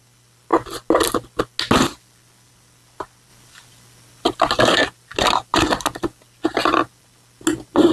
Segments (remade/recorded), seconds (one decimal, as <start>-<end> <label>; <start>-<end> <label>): 0.0-7.9 recorded